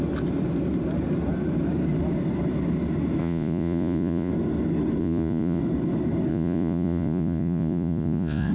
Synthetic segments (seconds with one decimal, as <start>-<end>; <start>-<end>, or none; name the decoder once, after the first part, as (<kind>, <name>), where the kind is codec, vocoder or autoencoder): 3.2-4.3 (vocoder, Vocos); 5.0-5.6; 6.3-8.5